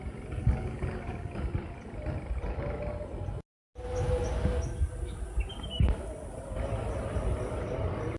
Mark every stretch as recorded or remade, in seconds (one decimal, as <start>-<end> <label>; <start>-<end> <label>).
0.0-0.4 recorded; 0.4-1.4 remade; 1.4-8.2 recorded